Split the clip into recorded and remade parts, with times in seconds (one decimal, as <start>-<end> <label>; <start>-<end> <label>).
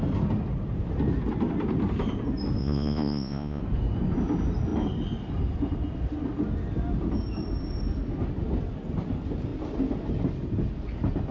0.0-2.6 recorded; 2.6-3.6 remade; 3.6-11.3 recorded